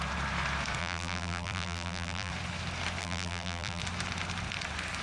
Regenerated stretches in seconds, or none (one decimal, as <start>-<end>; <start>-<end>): 0.8-2.3; 3.0-3.8